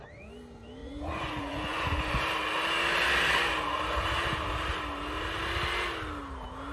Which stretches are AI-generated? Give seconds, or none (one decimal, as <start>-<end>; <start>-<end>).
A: 0.8-2.2